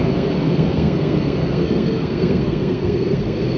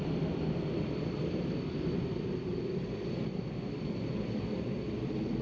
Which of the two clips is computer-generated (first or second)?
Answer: first